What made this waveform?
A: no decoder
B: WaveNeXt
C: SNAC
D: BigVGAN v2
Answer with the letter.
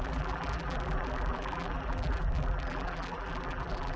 D